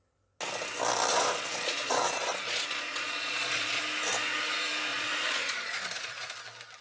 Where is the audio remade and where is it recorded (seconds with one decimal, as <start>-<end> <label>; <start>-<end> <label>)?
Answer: 0.0-1.1 recorded; 1.1-3.8 remade; 3.8-4.9 recorded; 4.9-6.3 remade; 6.3-6.8 recorded